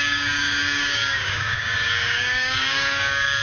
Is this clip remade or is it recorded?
remade